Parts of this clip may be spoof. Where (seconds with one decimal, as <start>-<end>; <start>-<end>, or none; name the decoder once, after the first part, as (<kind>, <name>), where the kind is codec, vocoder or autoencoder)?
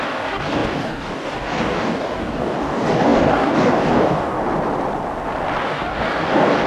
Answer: 0.0-4.4 (codec, DAC); 5.6-6.7